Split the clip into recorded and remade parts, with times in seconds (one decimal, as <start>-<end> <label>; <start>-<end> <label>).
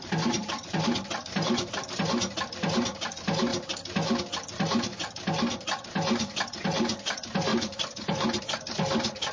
0.0-7.5 recorded; 7.5-8.4 remade; 8.4-9.3 recorded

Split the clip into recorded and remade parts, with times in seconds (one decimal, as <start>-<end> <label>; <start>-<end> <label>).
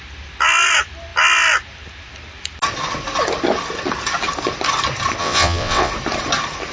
0.0-5.2 recorded; 5.2-5.9 remade; 5.9-6.7 recorded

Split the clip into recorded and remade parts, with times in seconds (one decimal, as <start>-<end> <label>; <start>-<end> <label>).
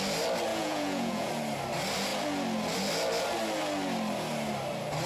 0.0-0.5 recorded; 0.5-1.3 remade; 1.3-5.1 recorded